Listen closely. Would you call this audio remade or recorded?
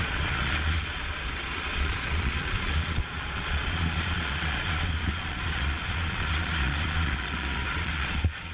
remade